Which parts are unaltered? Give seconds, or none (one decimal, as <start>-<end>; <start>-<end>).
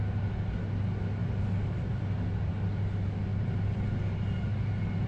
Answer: 0.0-5.1